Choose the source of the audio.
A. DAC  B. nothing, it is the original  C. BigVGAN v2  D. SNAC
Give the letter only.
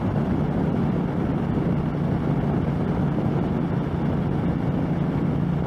B